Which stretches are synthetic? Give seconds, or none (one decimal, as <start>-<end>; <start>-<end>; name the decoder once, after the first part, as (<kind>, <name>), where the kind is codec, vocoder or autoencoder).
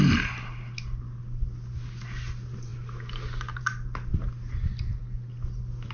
none